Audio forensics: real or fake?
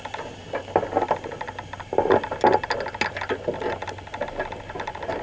real